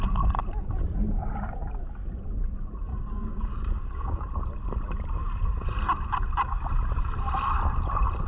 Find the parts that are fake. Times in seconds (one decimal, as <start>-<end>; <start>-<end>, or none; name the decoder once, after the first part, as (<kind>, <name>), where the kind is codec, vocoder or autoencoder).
2.9-4.3 (codec, DAC)